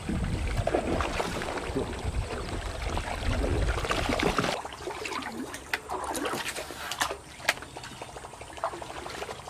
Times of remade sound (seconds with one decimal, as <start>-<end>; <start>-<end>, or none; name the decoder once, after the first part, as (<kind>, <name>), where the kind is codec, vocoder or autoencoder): none